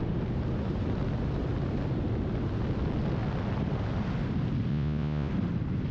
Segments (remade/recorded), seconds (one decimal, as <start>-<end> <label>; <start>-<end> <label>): 0.0-4.7 recorded; 4.7-5.3 remade; 5.3-5.9 recorded